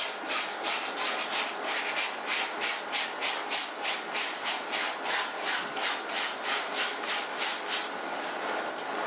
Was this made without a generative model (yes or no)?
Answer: yes